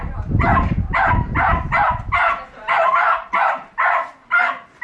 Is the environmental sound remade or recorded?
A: recorded